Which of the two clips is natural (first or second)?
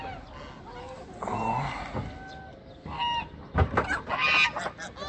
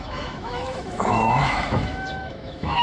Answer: first